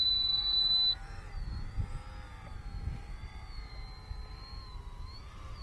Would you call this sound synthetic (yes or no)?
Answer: yes